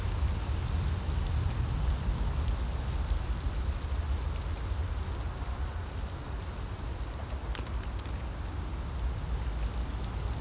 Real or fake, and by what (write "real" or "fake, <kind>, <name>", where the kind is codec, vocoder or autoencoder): real